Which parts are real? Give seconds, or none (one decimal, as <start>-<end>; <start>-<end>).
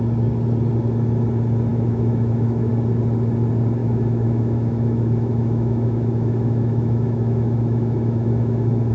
0.0-1.7; 2.7-3.8